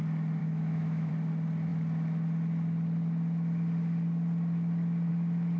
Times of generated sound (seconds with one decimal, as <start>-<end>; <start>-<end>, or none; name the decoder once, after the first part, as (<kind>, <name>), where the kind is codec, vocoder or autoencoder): 0.4-1.1 (autoencoder, DAC-VAE)